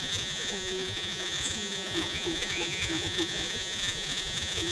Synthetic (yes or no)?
yes